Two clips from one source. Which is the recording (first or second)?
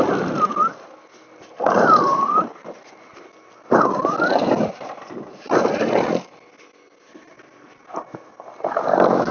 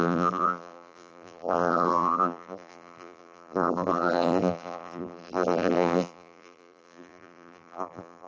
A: first